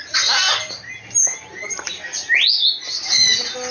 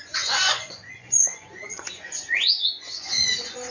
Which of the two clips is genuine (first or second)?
first